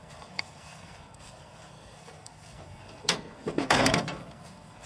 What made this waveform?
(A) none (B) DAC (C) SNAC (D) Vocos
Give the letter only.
C